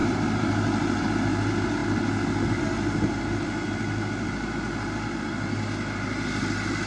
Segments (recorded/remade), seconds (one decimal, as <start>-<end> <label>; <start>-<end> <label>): 0.0-1.0 remade; 1.0-6.9 recorded